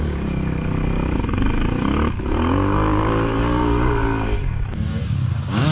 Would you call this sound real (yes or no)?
no